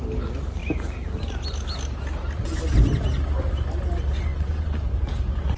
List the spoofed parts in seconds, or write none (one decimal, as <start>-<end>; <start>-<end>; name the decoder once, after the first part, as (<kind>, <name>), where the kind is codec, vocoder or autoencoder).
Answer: 4.3-4.8 (vocoder, WaveNeXt)